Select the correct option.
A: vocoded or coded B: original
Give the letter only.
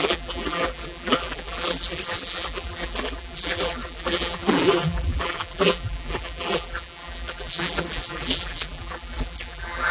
A